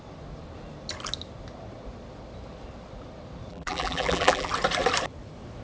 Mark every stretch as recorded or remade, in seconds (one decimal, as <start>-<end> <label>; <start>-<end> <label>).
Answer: 0.0-3.5 recorded; 3.5-4.5 remade; 4.5-5.6 recorded